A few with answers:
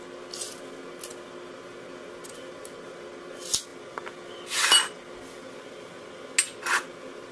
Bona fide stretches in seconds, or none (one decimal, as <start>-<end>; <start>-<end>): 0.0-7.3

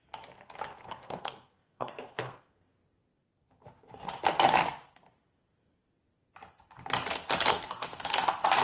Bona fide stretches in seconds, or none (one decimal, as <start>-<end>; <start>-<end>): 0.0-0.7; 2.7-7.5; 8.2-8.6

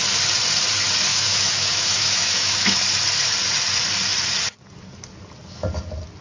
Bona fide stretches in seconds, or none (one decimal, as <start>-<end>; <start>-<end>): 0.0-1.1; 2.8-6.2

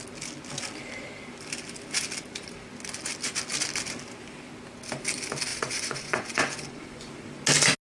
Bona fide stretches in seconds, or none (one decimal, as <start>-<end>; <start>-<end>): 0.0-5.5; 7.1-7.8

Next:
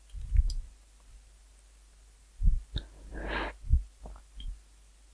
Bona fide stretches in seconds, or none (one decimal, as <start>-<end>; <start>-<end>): 0.0-5.1

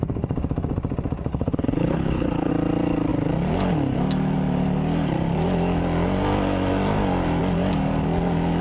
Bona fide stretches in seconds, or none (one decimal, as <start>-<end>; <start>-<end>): 0.0-1.3; 2.5-8.6

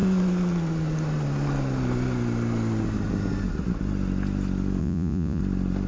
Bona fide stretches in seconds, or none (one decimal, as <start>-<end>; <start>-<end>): 0.0-4.8; 5.4-5.9

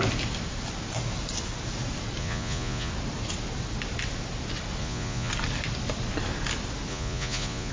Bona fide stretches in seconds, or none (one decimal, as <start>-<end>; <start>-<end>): 0.0-2.2; 2.9-4.8; 5.3-6.9